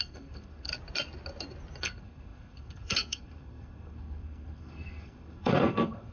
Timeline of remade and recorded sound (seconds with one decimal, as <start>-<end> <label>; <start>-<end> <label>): 0.0-0.7 remade; 0.7-1.8 recorded; 1.8-6.1 remade

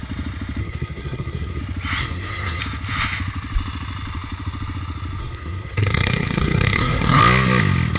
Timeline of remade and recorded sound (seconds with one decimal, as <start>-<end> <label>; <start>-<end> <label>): 0.0-0.6 recorded; 0.6-1.6 remade; 1.6-2.0 recorded; 2.0-2.6 remade; 2.6-5.2 recorded; 5.2-7.2 remade; 7.2-8.0 recorded

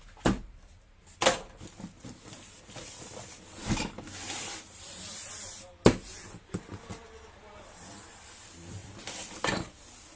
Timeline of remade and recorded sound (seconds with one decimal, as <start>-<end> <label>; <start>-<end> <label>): 0.0-10.2 recorded

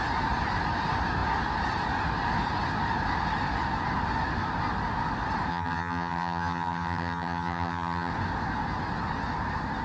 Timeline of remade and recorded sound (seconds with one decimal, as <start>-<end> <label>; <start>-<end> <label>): 0.0-5.5 recorded; 5.5-8.1 remade; 8.1-9.8 recorded

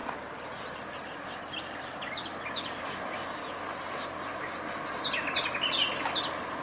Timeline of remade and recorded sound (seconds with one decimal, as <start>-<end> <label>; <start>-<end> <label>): 0.0-2.8 recorded; 2.8-3.4 remade; 3.4-6.6 recorded

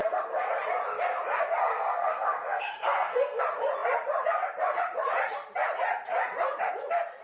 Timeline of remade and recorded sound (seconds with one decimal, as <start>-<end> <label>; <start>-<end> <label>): 0.0-0.5 remade; 0.5-1.6 recorded; 1.6-3.4 remade; 3.4-7.2 recorded

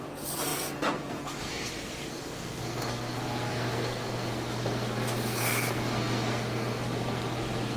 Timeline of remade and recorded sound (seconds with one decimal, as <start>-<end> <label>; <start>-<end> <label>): 0.0-7.8 remade

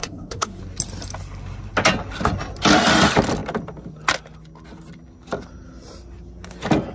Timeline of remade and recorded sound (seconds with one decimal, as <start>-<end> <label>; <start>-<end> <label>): 0.0-0.6 remade; 0.6-6.9 recorded